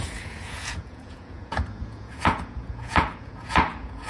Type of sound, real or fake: fake